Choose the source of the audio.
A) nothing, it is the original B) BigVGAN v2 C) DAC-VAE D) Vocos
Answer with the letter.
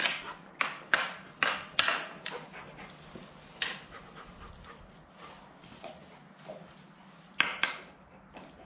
A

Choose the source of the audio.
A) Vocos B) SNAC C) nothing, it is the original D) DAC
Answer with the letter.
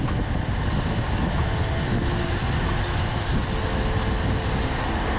C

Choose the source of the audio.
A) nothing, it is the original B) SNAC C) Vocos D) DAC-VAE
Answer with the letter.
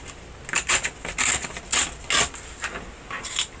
A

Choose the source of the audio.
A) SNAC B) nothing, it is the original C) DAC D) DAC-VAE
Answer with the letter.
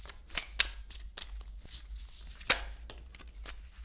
B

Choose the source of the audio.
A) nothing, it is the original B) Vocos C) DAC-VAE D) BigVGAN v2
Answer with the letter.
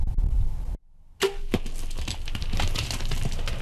A